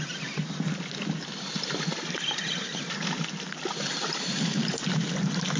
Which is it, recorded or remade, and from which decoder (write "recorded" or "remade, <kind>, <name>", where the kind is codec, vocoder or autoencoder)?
recorded